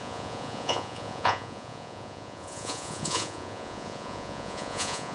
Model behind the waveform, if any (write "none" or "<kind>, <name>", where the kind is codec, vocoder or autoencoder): vocoder, Vocos